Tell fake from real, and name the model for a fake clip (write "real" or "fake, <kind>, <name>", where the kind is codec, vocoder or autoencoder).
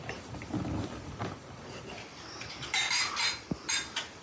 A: real